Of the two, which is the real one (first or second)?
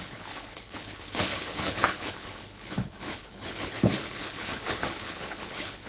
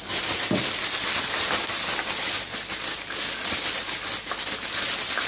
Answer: second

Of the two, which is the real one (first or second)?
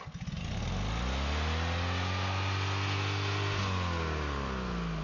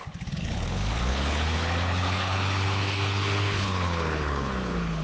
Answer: first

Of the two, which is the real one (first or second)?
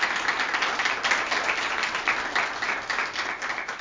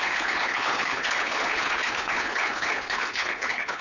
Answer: first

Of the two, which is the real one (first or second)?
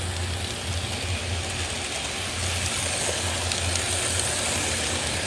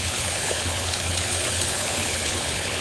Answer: first